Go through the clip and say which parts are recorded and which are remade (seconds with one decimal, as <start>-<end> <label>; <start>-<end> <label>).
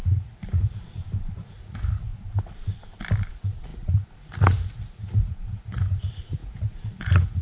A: 0.0-1.0 remade; 1.0-1.5 recorded; 1.5-2.1 remade; 2.1-3.3 recorded; 3.3-7.4 remade